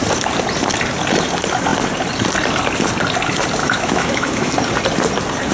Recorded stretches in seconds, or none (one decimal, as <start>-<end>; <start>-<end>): 0.0-3.6; 4.5-5.5